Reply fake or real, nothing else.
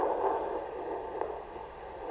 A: real